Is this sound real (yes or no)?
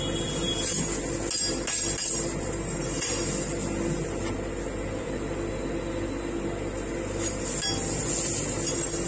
yes